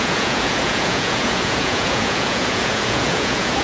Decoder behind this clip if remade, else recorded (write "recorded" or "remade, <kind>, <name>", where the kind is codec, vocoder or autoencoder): remade, vocoder, Vocos